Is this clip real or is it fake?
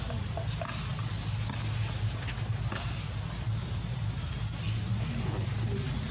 real